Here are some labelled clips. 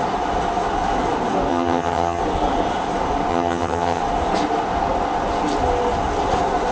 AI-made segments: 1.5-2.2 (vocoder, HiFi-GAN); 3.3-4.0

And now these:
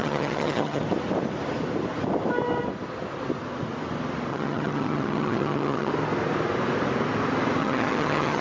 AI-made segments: 0.0-0.8 (vocoder, HiFi-GAN); 4.3-5.9; 7.6-8.4

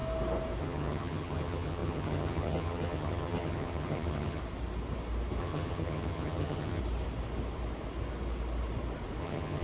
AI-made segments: 0.6-4.4 (vocoder, HiFi-GAN); 5.4-6.8; 9.2-9.6

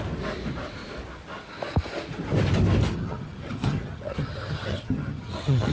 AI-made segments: 2.9-5.7 (vocoder, HiFi-GAN)

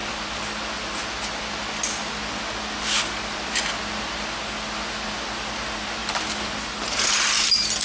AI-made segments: none

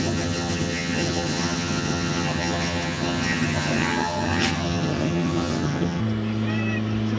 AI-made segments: 0.0-6.0 (vocoder, HiFi-GAN)

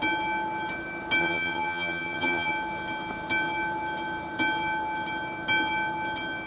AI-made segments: 1.2-2.5 (vocoder, HiFi-GAN)

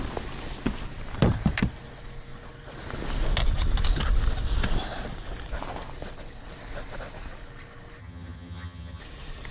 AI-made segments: 8.0-9.0 (vocoder, HiFi-GAN)